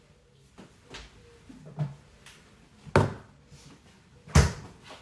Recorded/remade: recorded